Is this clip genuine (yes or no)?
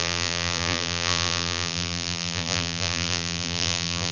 no